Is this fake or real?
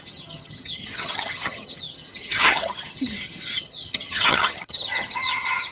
fake